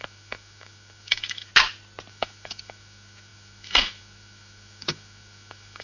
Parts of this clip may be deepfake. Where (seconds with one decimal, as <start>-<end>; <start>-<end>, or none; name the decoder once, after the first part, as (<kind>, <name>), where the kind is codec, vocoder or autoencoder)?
0.0-1.5 (autoencoder, DAC-VAE); 2.1-5.8